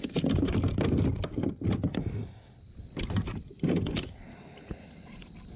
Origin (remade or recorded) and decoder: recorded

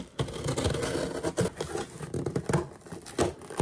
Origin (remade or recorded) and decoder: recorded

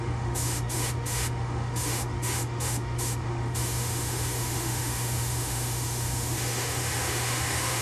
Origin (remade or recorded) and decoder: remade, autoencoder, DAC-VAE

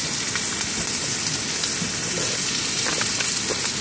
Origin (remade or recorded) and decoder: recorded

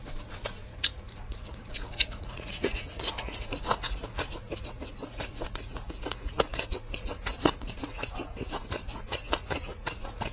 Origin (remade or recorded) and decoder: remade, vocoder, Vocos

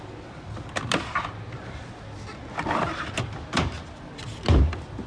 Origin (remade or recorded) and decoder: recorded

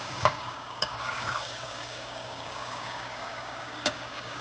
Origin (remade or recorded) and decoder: remade, codec, DAC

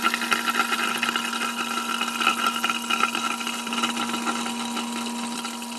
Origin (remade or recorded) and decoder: recorded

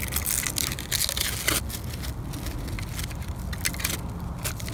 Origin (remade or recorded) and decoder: recorded